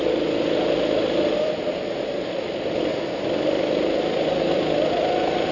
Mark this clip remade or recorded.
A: recorded